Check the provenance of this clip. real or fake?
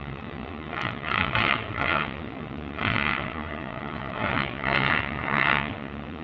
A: fake